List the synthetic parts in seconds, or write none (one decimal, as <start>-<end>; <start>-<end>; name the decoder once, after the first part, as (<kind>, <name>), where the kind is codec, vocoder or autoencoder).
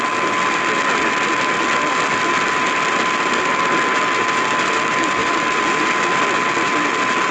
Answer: none